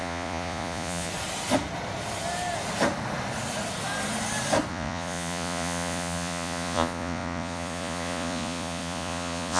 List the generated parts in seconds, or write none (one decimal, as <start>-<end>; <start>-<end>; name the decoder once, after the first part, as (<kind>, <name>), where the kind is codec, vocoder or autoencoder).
0.0-1.1 (vocoder, Vocos); 4.7-9.6